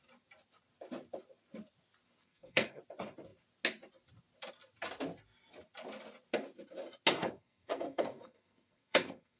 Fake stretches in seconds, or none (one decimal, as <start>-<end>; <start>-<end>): 2.2-2.8; 7.2-9.4